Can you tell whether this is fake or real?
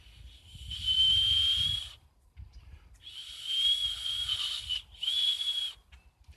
real